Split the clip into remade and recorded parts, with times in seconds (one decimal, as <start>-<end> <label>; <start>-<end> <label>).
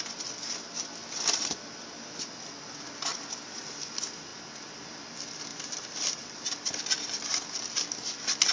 0.0-5.5 recorded; 5.5-7.9 remade; 7.9-8.5 recorded